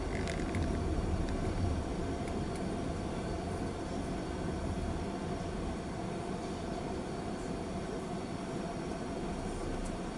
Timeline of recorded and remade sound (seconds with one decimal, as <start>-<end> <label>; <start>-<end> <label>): 0.0-10.2 recorded